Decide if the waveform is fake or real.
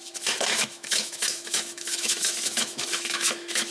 fake